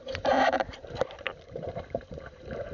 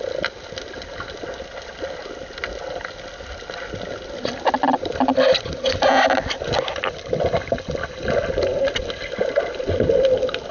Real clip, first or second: second